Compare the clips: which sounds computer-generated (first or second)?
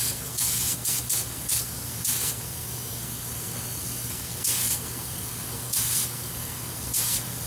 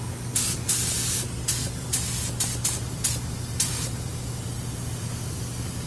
first